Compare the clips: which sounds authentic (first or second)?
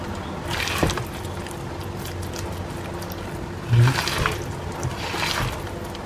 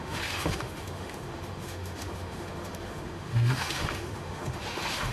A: first